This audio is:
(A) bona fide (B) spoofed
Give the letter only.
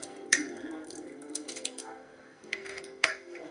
B